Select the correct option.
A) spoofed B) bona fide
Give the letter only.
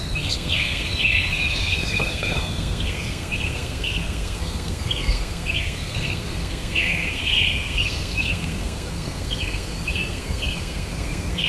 A